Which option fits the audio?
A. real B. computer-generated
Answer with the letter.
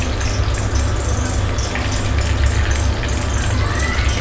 A